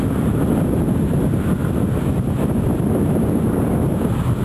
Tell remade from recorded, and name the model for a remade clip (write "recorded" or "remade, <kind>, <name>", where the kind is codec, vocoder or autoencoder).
recorded